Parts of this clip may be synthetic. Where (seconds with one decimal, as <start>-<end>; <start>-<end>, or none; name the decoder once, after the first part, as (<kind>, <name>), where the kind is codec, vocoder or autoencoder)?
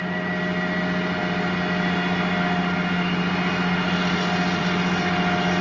none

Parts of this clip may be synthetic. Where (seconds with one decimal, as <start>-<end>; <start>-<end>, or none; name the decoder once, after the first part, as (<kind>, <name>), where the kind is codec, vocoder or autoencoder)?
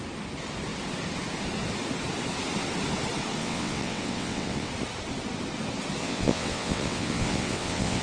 3.4-4.7 (vocoder, WaveNeXt); 6.0-8.0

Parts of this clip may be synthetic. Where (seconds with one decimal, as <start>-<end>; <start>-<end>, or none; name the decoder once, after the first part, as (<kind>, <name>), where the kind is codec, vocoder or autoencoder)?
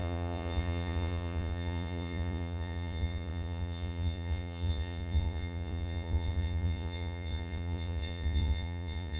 0.0-9.2 (vocoder, Vocos)